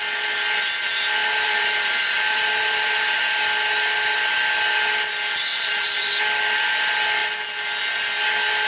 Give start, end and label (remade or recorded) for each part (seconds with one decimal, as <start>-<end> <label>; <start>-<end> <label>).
0.0-1.2 recorded; 1.2-3.2 remade; 3.2-5.5 recorded; 5.5-6.1 remade; 6.1-8.7 recorded